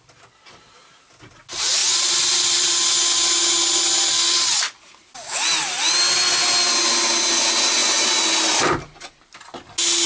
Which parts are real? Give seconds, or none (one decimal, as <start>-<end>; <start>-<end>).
0.0-10.1